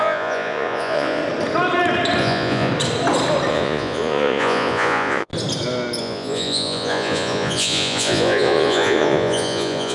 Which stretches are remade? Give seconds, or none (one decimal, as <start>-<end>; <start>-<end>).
0.0-1.2; 2.2-2.7; 3.5-5.3; 6.0-9.9